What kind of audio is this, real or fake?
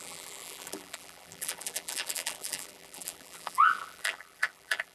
fake